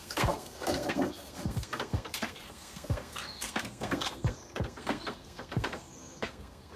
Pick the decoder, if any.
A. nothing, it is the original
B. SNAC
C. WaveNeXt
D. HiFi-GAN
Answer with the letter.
B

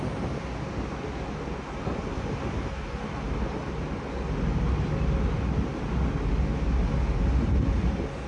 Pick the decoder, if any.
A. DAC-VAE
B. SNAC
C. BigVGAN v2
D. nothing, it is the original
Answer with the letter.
D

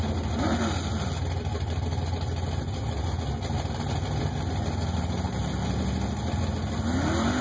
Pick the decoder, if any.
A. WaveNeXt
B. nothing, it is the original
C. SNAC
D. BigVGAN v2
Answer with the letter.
B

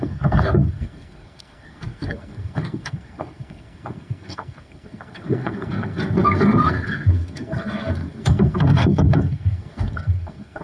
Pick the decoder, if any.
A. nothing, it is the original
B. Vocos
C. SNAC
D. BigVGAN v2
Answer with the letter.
C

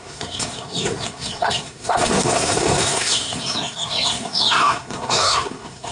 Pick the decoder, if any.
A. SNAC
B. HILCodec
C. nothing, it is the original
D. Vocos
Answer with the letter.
A